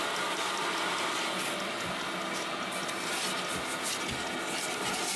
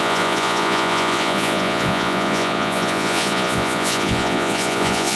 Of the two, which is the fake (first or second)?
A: second